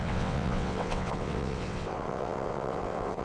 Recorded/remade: remade